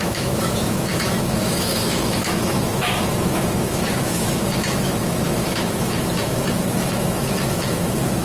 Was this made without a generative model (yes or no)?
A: no